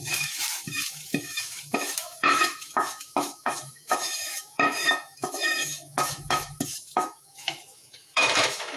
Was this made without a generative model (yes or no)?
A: no